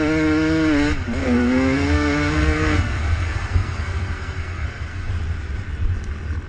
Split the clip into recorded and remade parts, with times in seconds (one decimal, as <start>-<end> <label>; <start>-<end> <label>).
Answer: 0.0-1.2 recorded; 1.2-5.1 remade; 5.1-6.5 recorded

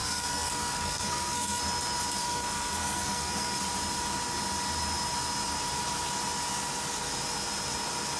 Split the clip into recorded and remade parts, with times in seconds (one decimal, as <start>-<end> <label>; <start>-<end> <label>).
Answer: 0.0-1.6 remade; 1.6-2.2 recorded; 2.2-3.6 remade; 3.6-8.2 recorded

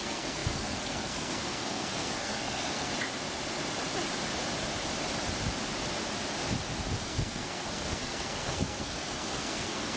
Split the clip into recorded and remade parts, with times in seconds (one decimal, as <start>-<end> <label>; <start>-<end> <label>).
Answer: 0.0-2.9 remade; 2.9-7.0 recorded; 7.0-10.0 remade

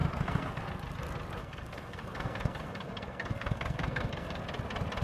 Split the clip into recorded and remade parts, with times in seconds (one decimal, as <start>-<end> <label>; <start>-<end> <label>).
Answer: 0.0-0.6 remade; 0.6-1.4 recorded; 1.4-4.4 remade; 4.4-5.0 recorded

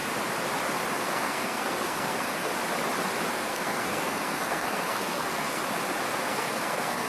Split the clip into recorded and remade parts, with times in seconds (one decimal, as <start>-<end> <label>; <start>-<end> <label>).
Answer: 0.0-0.9 recorded; 0.9-2.5 remade; 2.5-3.3 recorded; 3.3-5.6 remade; 5.6-6.2 recorded; 6.2-7.1 remade